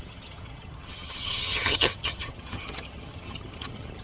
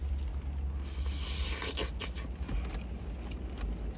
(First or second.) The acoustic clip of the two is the second